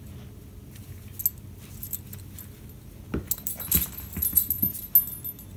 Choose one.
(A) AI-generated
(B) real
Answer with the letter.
B